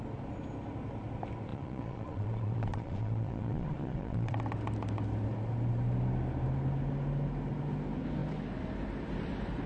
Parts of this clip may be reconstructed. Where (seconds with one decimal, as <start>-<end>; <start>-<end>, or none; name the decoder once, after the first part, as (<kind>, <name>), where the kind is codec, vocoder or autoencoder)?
1.5-4.4 (vocoder, Vocos)